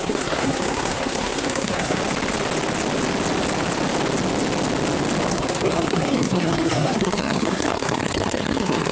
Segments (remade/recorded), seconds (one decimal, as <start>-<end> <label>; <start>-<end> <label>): 0.0-2.0 remade; 2.0-5.3 recorded; 5.3-8.9 remade